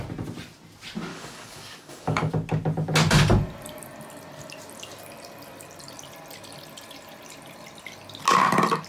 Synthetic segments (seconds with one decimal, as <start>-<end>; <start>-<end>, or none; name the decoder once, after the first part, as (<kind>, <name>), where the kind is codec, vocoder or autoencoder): 1.1-2.3 (codec, DAC)